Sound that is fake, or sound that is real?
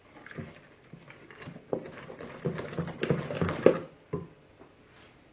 real